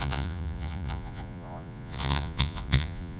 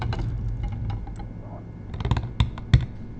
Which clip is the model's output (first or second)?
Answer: first